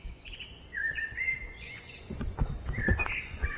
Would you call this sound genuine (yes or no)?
no